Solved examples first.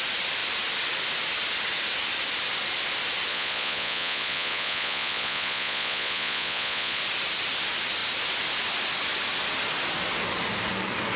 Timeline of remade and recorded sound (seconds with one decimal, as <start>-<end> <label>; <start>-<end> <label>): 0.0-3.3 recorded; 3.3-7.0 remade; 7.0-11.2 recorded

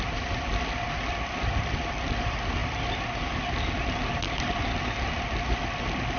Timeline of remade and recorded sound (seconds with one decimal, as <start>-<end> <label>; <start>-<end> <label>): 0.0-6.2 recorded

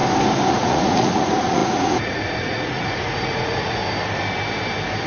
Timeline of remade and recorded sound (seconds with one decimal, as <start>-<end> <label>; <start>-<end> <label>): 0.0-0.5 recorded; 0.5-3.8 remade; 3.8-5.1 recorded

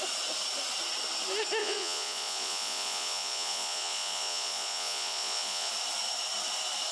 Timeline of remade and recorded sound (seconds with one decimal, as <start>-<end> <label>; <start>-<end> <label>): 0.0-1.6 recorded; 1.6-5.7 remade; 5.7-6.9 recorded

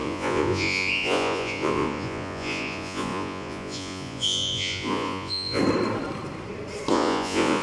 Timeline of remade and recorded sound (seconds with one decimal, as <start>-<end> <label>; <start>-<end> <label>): 0.0-5.6 remade; 5.6-6.9 recorded; 6.9-7.6 remade

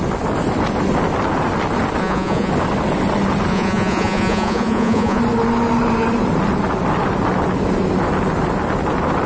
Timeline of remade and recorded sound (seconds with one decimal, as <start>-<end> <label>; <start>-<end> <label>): 0.0-2.0 recorded; 2.0-2.5 remade; 2.5-3.5 recorded; 3.5-5.2 remade; 5.2-9.3 recorded

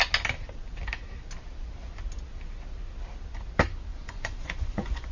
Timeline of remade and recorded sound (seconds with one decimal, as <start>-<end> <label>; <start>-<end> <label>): 0.0-3.9 recorded; 3.9-5.1 remade